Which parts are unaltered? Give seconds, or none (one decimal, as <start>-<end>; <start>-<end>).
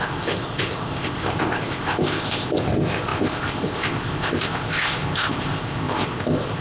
none